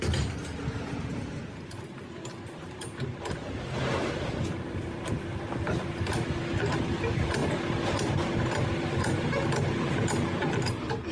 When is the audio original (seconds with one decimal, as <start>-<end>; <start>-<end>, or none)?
0.0-11.1